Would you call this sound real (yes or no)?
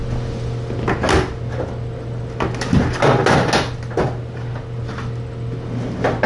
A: yes